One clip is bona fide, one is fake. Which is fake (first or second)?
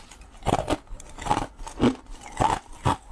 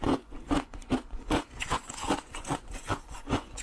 second